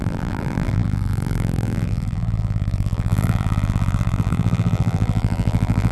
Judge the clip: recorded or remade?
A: remade